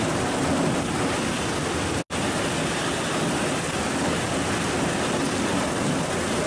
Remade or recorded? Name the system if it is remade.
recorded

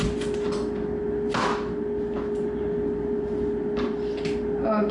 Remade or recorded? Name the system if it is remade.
recorded